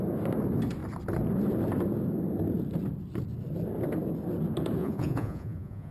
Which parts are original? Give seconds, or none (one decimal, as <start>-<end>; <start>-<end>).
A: 0.0-4.8